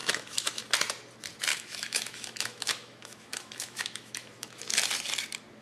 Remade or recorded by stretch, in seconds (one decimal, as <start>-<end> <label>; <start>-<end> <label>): 0.0-0.6 remade; 0.6-1.5 recorded; 1.5-4.6 remade; 4.6-5.6 recorded